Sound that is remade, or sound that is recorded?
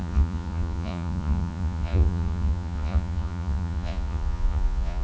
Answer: remade